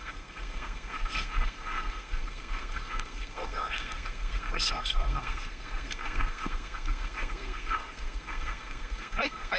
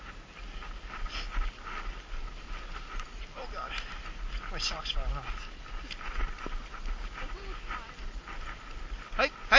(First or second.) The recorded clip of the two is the second